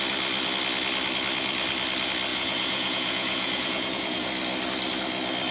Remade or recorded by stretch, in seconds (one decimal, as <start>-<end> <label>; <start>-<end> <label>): 0.0-2.3 recorded; 2.3-4.3 remade; 4.3-5.5 recorded